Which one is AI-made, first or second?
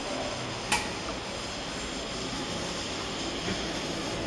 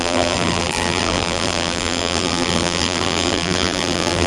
second